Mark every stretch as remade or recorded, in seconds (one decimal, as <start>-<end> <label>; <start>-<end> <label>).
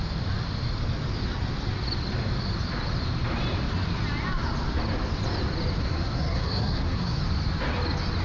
0.0-5.8 recorded; 5.8-7.2 remade; 7.2-8.2 recorded